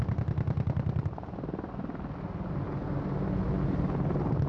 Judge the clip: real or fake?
real